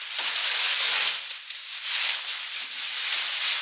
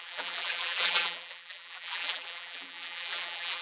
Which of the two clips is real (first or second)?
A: first